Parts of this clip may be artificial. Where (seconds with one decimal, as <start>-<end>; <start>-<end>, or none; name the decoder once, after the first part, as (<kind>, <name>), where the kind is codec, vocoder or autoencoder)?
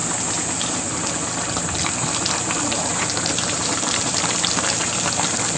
2.9-4.1 (vocoder, BigVGAN v2)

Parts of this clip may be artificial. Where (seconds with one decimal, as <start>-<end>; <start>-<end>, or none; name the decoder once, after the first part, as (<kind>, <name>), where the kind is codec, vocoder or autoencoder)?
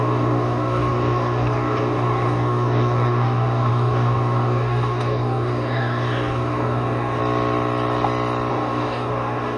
0.0-7.2 (codec, DAC); 8.5-9.6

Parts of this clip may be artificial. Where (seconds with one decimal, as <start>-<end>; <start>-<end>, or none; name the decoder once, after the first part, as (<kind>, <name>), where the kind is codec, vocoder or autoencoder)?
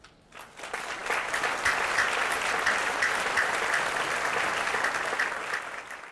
none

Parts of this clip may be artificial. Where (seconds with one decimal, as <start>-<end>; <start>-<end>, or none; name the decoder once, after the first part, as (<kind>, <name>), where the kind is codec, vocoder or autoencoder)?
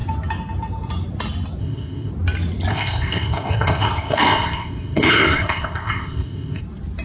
1.6-2.1 (codec, ZipCodec); 2.7-6.6